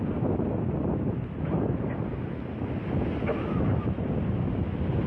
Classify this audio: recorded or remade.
recorded